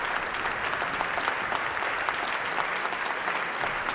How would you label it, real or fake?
real